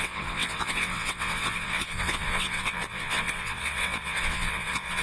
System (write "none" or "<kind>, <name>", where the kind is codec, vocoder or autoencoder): vocoder, WaveNeXt